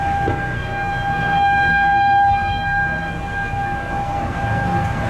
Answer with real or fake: fake